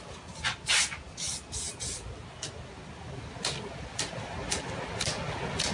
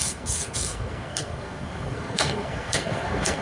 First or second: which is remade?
second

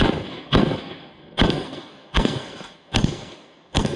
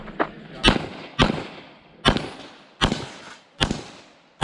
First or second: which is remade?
first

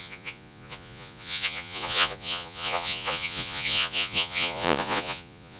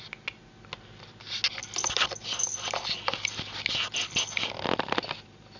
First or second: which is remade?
first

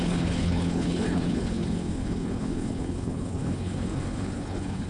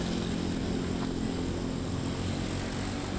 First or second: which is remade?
first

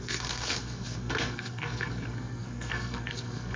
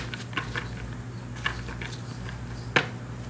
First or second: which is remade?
first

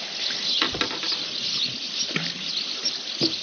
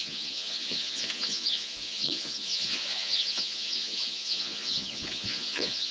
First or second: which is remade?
second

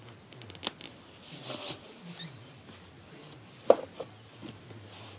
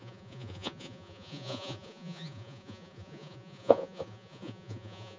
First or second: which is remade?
second